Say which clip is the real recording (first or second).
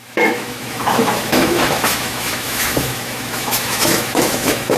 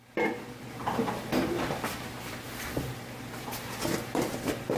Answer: second